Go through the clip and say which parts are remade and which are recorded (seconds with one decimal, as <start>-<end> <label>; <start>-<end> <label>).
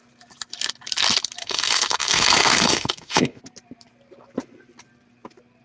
0.0-1.4 recorded; 1.4-3.4 remade; 3.4-5.6 recorded